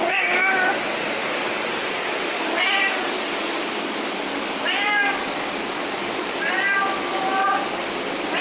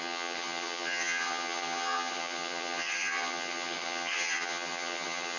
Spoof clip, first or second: second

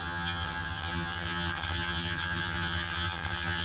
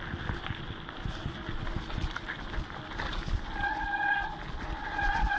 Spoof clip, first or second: first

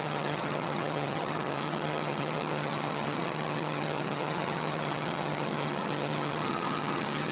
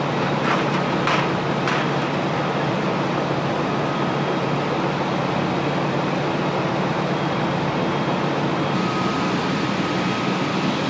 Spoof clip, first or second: first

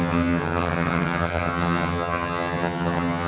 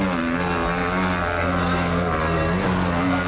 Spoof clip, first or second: first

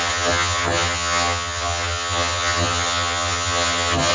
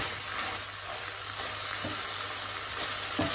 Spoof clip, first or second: first